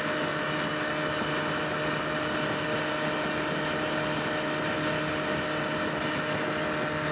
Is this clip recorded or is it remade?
recorded